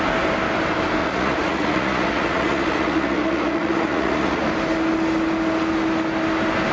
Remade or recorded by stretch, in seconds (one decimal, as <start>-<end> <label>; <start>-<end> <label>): 0.0-1.0 recorded; 1.0-4.5 remade; 4.5-6.7 recorded